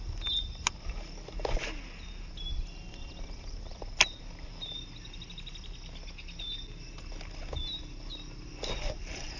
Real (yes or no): yes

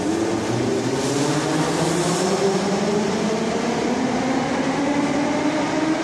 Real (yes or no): yes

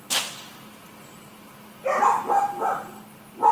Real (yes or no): yes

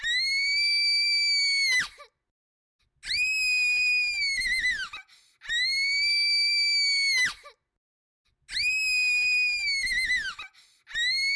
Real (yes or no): yes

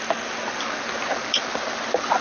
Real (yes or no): yes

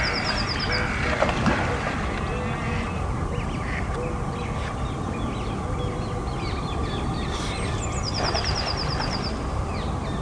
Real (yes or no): yes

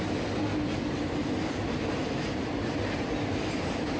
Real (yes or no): yes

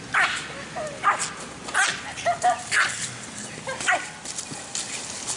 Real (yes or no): yes